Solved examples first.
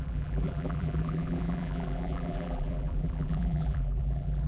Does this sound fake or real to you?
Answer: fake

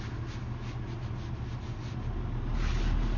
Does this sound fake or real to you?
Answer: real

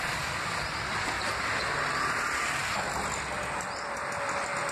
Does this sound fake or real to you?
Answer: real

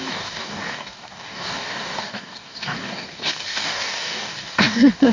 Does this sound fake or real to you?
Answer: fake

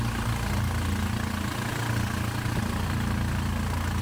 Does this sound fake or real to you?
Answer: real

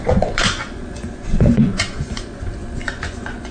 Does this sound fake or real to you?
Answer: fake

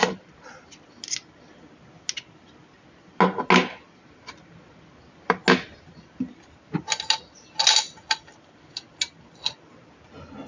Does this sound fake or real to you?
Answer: real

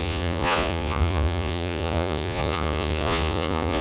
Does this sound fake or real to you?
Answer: fake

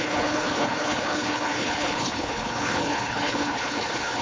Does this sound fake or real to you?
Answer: fake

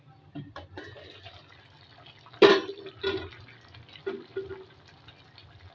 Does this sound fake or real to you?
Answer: real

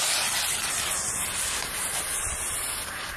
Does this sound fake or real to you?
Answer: real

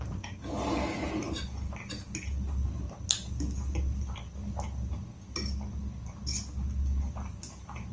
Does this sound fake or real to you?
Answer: real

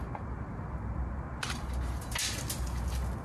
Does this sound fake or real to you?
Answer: real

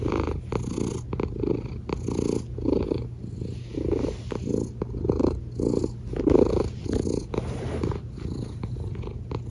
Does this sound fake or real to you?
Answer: real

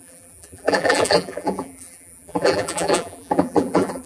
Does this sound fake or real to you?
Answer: fake